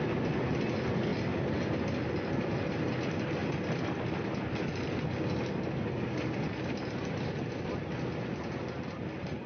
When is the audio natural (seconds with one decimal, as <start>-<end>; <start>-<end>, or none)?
0.0-9.5